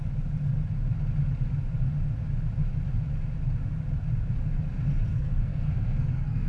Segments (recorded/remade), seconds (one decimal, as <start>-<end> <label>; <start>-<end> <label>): 0.0-5.1 recorded; 5.1-6.5 remade